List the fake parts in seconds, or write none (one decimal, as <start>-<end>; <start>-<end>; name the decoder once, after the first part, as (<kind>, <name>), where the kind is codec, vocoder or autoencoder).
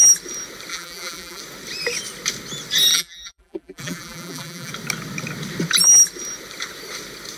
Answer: 0.7-1.4 (vocoder, BigVGAN v2); 2.9-4.7